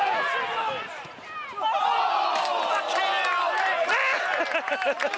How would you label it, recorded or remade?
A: recorded